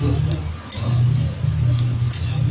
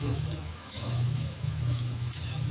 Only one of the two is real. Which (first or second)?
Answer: first